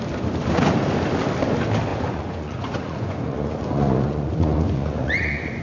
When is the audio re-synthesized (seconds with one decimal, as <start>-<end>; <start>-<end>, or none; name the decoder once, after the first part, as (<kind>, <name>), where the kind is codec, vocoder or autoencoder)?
1.9-5.6 (vocoder, Vocos)